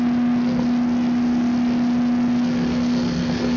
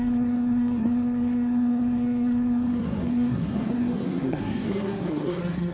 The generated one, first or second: second